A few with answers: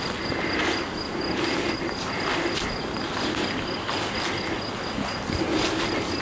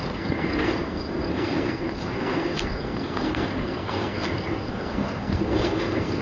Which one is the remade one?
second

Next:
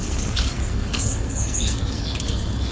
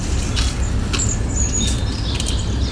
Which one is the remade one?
first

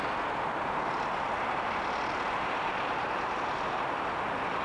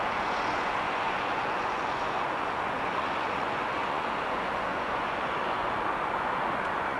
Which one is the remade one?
second